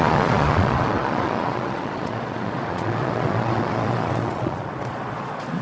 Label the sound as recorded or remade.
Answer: remade